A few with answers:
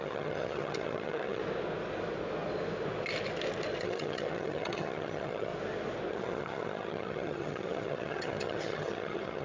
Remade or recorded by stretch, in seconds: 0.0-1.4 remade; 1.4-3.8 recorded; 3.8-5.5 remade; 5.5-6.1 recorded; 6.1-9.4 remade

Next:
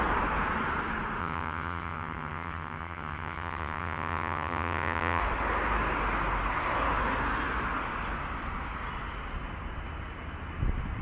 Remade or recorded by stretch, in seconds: 0.0-1.2 recorded; 1.2-5.2 remade; 5.2-11.0 recorded